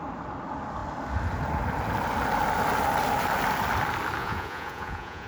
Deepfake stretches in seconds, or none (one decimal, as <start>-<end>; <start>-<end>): 4.2-5.3